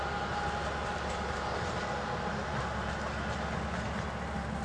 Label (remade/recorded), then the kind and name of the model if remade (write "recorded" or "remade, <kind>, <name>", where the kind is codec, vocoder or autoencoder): recorded